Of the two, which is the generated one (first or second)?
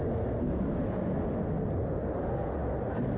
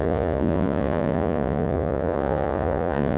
second